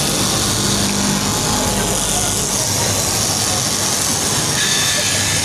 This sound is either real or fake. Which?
real